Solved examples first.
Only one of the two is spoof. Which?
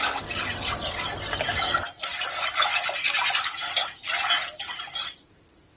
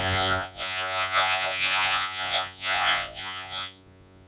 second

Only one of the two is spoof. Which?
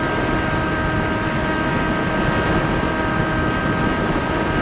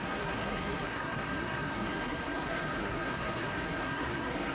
second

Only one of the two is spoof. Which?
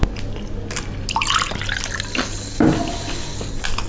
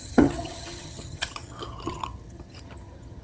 second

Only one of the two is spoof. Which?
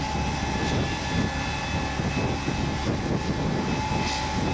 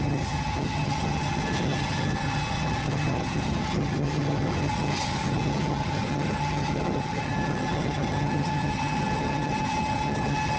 second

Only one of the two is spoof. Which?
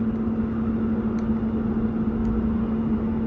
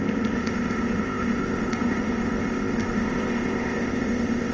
second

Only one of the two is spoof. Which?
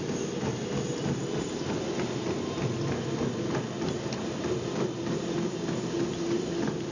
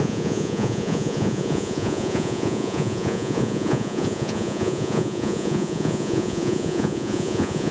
second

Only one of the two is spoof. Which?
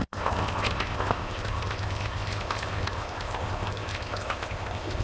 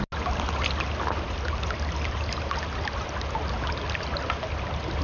first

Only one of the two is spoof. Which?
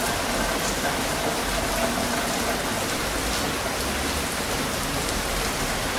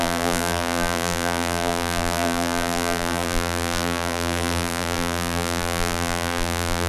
second